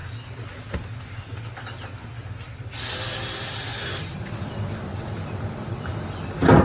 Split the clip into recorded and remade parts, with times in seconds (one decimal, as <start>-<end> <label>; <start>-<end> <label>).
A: 0.0-4.9 recorded; 4.9-5.9 remade; 5.9-6.6 recorded